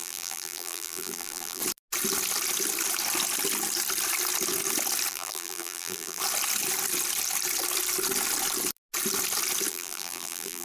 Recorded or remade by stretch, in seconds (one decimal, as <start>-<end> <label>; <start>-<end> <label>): 0.0-1.6 remade; 1.6-5.1 recorded; 5.1-6.2 remade; 6.2-9.7 recorded; 9.7-10.6 remade